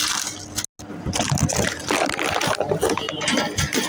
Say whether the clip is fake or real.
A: real